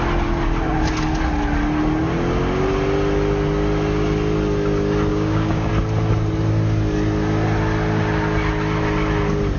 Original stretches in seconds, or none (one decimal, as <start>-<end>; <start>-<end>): 0.0-5.1; 5.7-9.6